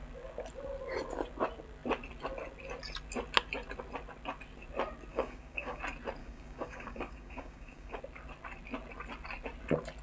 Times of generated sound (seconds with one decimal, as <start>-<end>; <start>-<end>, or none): 5.1-5.8; 6.2-8.0